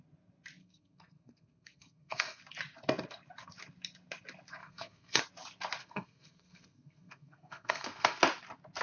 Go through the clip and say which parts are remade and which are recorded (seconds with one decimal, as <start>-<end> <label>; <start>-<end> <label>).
0.0-0.6 recorded; 0.6-2.4 remade; 2.4-4.6 recorded; 4.6-5.2 remade; 5.2-5.8 recorded; 5.8-8.2 remade; 8.2-8.8 recorded